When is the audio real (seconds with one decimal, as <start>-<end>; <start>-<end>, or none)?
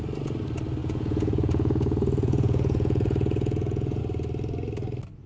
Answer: 0.0-0.8; 4.0-5.3